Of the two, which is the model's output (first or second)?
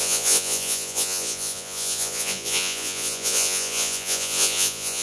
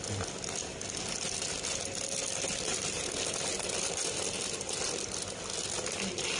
first